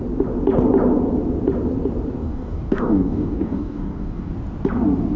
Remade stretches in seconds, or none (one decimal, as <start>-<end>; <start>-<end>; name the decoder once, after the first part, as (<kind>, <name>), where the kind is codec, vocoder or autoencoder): 2.2-4.3 (codec, DAC)